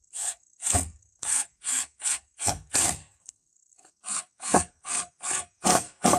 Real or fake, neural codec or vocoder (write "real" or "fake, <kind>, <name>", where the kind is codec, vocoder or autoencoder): fake, codec, SNAC